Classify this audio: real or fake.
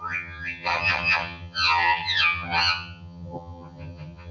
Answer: fake